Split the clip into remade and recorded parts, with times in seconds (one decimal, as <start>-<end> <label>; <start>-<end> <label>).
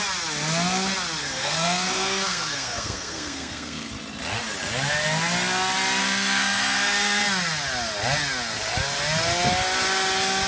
0.0-1.2 recorded; 1.2-3.9 remade; 3.9-6.0 recorded; 6.0-7.2 remade; 7.2-10.5 recorded